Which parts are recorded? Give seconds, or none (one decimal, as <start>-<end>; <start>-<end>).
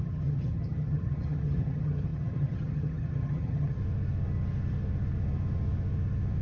3.8-6.4